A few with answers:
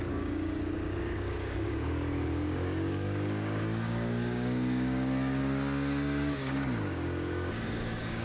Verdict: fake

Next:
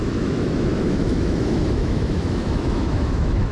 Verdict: fake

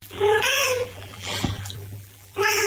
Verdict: fake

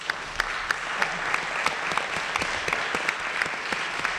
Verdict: real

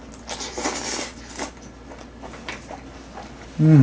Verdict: real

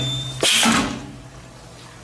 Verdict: real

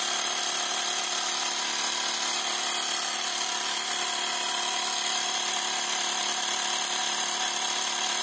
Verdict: real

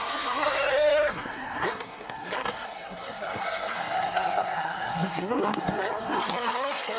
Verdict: fake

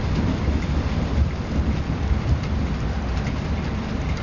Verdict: fake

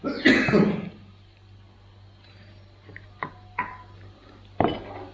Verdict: real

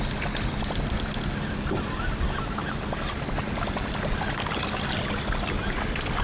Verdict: real